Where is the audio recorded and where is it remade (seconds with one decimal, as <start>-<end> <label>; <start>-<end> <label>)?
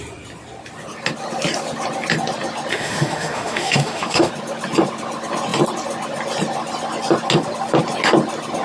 0.0-2.7 recorded; 2.7-4.3 remade; 4.3-8.6 recorded